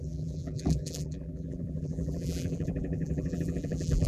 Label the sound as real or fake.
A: fake